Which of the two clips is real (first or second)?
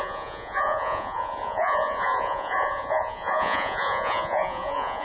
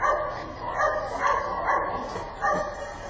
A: second